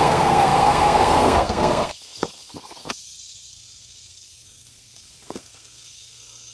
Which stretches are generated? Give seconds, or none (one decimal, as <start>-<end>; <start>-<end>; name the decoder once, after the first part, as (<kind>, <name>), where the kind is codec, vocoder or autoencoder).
0.0-6.5 (codec, SNAC)